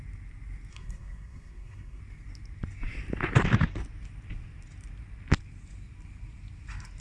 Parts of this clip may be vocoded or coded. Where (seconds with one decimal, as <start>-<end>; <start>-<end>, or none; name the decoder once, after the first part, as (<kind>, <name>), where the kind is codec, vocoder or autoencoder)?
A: 0.7-2.0 (codec, SNAC)